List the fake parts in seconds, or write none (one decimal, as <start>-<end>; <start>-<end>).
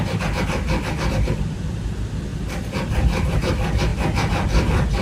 2.3-3.5